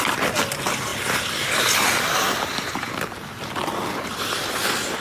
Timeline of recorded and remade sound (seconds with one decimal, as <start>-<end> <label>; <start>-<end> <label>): 0.0-5.0 recorded